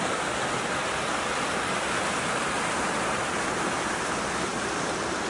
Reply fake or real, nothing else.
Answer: real